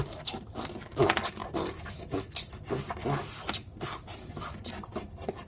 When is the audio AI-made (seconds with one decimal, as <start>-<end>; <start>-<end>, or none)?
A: 1.4-2.1